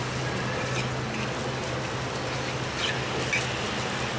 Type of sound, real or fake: real